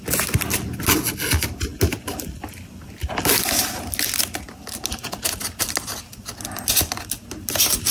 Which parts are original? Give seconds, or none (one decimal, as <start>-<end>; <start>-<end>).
0.0-7.9